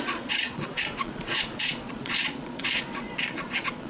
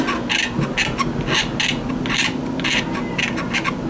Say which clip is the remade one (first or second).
first